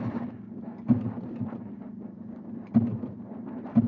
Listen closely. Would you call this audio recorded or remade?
recorded